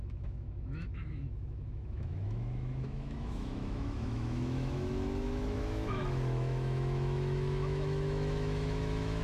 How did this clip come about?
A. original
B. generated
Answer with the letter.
B